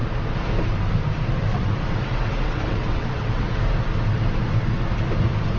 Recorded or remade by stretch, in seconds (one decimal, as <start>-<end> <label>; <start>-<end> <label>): 0.0-1.5 recorded; 1.5-3.6 remade; 3.6-5.6 recorded